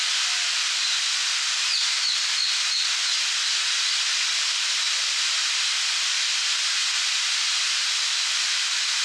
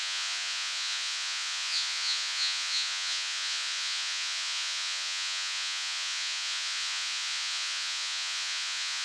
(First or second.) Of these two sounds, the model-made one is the second